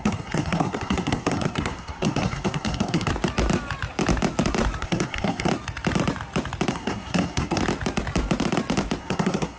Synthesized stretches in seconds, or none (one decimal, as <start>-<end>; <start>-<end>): 0.0-3.1; 4.8-5.5; 6.7-7.6; 9.0-9.6